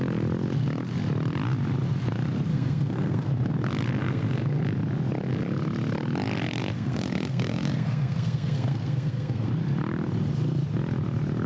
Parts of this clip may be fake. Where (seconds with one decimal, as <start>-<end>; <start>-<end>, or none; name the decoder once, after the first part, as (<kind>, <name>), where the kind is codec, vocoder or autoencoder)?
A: 2.5-3.3 (codec, SNAC); 4.0-4.6; 6.6-9.5